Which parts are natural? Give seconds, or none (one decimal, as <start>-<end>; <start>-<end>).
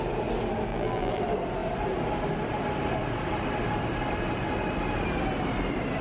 0.0-0.7; 1.2-6.0